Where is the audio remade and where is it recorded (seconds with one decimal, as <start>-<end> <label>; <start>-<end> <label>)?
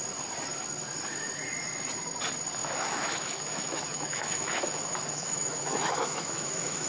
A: 0.0-2.6 recorded; 2.6-6.9 remade